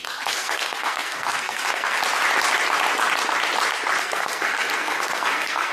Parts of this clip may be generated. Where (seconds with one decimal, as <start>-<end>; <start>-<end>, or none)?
0.0-2.0; 4.0-5.7